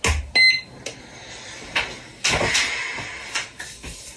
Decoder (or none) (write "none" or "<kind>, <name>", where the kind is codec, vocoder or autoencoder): none